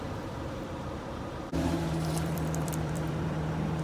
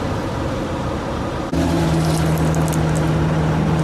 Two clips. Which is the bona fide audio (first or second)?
second